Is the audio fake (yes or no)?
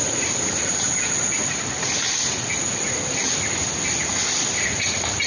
no